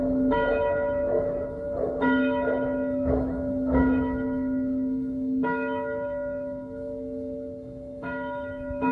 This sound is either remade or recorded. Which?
remade